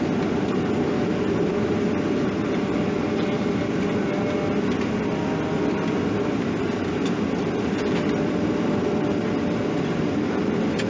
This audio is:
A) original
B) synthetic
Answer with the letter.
A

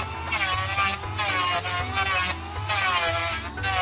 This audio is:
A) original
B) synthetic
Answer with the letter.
A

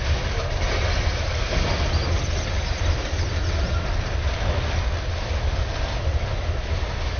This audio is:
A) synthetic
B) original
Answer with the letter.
B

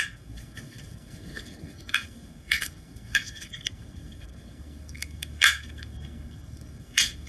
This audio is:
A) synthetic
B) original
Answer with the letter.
A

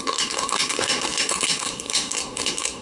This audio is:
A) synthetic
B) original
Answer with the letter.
A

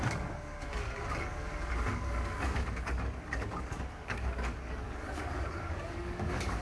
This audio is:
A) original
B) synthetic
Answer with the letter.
B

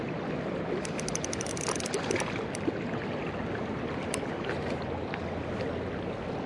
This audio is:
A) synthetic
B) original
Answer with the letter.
B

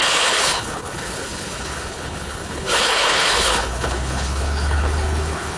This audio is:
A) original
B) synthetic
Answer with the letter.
B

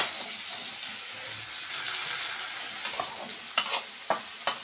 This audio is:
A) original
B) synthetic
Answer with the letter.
A